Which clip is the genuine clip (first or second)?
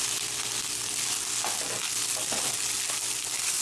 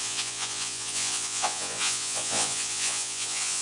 first